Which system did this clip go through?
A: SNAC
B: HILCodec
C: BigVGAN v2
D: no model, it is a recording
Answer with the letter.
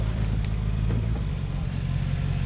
C